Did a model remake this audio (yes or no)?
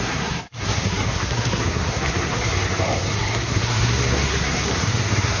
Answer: yes